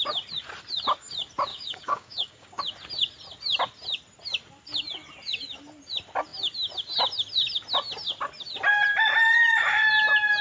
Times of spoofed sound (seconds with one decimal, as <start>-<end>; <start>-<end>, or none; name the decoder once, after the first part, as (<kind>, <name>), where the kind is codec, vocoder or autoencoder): 1.5-2.6 (codec, DAC)